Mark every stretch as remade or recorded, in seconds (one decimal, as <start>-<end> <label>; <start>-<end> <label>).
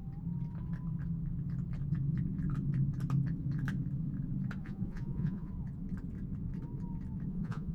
0.0-4.6 recorded; 4.6-5.5 remade; 5.5-7.3 recorded; 7.3-7.7 remade